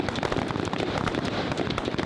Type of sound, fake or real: real